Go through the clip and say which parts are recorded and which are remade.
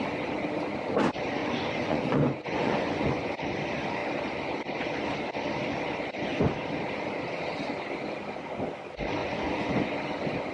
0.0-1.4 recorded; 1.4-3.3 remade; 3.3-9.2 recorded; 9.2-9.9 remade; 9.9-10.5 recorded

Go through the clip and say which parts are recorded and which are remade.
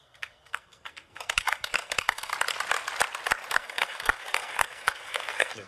0.0-2.3 remade; 2.3-3.5 recorded; 3.5-5.7 remade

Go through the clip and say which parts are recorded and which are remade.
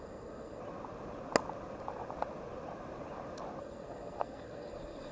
0.0-0.6 remade; 0.6-3.6 recorded; 3.6-5.1 remade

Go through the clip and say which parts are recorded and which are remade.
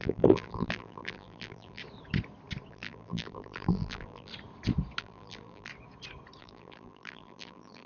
0.0-1.8 remade; 1.8-2.7 recorded; 2.7-4.3 remade; 4.3-5.0 recorded; 5.0-5.7 remade; 5.7-6.4 recorded; 6.4-7.9 remade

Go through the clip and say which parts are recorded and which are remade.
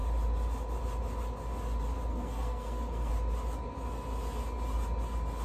0.0-2.1 recorded; 2.1-3.1 remade; 3.1-5.4 recorded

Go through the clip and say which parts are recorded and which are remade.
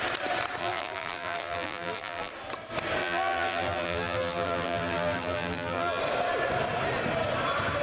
0.0-0.6 recorded; 0.6-2.3 remade; 2.3-3.0 recorded; 3.0-6.0 remade; 6.0-7.8 recorded